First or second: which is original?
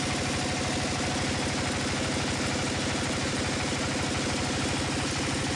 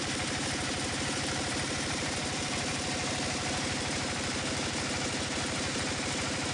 first